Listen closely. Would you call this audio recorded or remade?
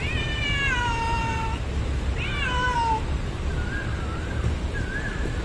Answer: remade